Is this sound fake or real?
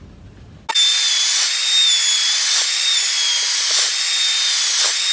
real